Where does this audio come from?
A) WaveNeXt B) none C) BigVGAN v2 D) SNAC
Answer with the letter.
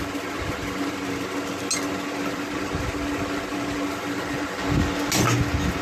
B